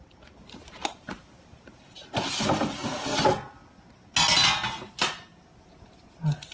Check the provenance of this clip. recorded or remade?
recorded